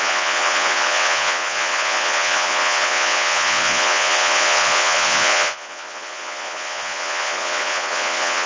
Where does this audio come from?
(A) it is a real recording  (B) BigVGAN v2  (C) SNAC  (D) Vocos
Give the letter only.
D